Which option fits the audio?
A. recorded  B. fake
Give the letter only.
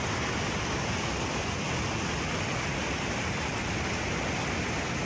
A